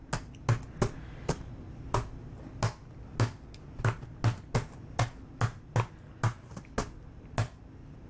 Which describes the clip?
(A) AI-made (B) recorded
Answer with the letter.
B